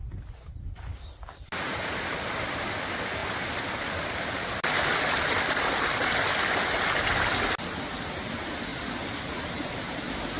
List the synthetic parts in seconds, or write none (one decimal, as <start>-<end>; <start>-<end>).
0.9-2.6